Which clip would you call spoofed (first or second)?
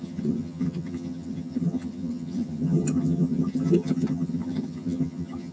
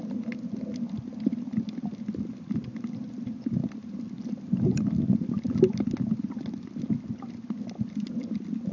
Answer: first